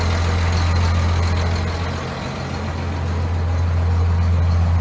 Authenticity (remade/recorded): recorded